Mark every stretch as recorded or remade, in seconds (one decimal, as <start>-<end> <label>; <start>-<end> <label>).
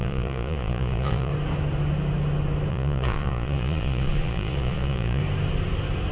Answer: 0.0-1.3 remade; 1.3-2.7 recorded; 2.7-5.2 remade; 5.2-6.1 recorded